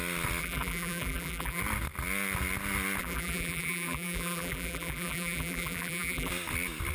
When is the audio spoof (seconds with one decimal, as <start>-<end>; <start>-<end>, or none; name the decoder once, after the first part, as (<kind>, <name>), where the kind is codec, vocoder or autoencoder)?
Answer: 0.4-1.6 (vocoder, BigVGAN v2); 3.0-6.3